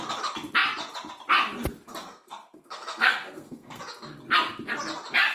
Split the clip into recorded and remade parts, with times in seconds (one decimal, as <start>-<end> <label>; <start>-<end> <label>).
0.0-2.0 recorded; 2.0-3.8 remade; 3.8-5.3 recorded